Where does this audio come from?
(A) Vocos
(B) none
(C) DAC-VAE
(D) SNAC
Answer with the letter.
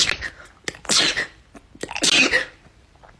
B